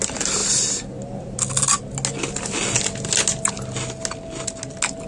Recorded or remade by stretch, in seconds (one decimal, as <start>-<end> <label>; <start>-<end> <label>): 0.0-5.1 recorded